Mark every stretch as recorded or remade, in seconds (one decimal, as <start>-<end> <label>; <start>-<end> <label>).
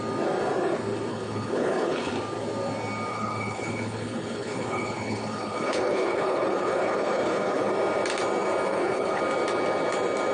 0.0-1.1 recorded; 1.1-2.1 remade; 2.1-3.1 recorded; 3.1-7.7 remade; 7.7-8.7 recorded; 8.7-9.2 remade; 9.2-10.3 recorded